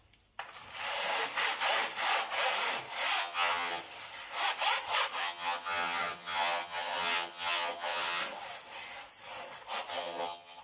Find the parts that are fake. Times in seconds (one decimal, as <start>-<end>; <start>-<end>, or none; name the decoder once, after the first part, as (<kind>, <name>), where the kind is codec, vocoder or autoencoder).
3.2-3.8 (vocoder, HiFi-GAN); 5.2-8.2; 9.9-10.6